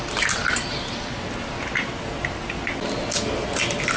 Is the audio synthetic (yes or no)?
no